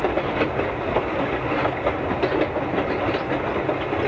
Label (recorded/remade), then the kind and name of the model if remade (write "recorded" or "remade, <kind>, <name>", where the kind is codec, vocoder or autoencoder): recorded